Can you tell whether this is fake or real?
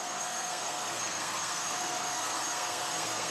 fake